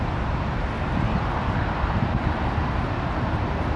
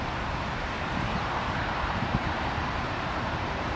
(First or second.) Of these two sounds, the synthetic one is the second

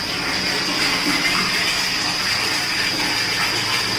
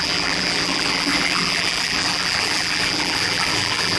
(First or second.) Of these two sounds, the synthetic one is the second